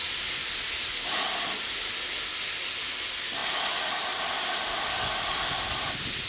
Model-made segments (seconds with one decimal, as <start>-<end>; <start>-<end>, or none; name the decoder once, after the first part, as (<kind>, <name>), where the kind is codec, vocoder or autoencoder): 0.4-1.2 (vocoder, BigVGAN v2)